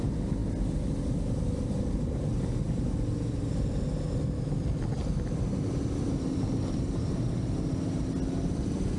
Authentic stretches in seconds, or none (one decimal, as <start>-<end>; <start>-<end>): 0.0-9.0